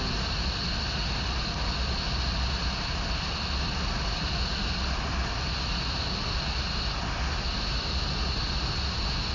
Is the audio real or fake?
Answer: real